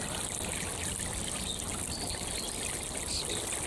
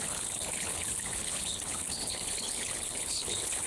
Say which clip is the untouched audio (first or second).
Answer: first